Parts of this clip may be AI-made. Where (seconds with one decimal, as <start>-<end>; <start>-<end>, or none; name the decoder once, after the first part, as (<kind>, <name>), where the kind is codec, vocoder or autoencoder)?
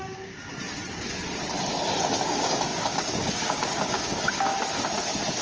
0.0-0.5 (codec, DAC); 2.2-4.5